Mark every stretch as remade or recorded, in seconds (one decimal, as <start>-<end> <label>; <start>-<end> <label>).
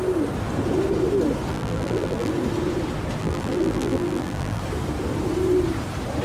0.0-1.5 recorded; 1.5-2.3 remade; 2.3-3.2 recorded; 3.2-4.6 remade; 4.6-6.2 recorded